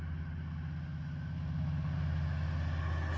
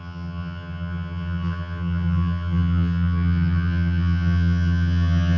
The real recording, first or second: first